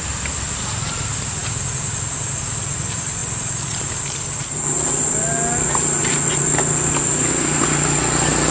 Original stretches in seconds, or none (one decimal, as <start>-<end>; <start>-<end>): 1.4-2.3; 3.2-4.9; 6.0-7.3